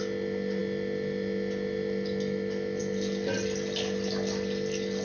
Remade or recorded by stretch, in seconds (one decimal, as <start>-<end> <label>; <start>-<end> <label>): 0.0-5.0 recorded